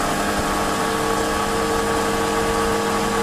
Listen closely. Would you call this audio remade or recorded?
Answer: recorded